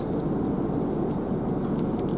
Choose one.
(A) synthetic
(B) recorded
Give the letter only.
B